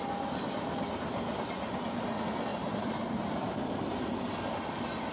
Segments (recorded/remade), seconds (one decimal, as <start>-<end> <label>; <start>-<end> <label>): 0.0-2.5 recorded; 2.5-4.1 remade; 4.1-5.1 recorded